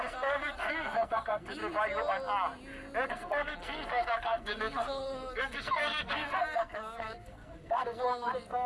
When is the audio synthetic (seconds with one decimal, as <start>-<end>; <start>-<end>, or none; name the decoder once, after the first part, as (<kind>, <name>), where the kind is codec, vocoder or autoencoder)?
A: 0.0-1.6 (codec, SNAC); 3.1-8.7